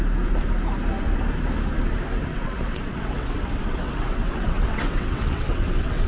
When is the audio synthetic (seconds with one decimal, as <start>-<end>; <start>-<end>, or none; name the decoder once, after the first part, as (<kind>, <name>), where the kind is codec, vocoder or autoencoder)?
2.3-6.1 (vocoder, WaveNeXt)